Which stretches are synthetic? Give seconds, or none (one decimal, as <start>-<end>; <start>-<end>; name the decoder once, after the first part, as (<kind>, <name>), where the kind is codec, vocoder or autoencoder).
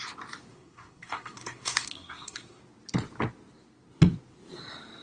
0.5-2.6 (codec, SNAC)